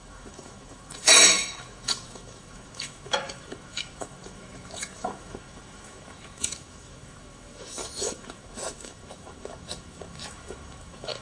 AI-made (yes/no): yes